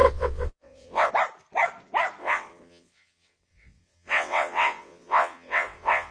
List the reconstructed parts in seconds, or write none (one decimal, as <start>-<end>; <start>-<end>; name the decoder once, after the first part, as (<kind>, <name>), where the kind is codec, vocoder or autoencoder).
0.0-1.1 (vocoder, WaveNeXt); 2.2-6.1